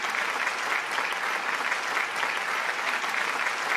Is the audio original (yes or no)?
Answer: yes